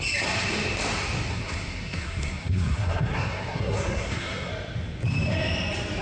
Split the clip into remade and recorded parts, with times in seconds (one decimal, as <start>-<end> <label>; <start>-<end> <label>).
0.0-1.3 recorded; 1.3-4.5 remade; 4.5-6.0 recorded